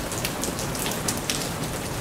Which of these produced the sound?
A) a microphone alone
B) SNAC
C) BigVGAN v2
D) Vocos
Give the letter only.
A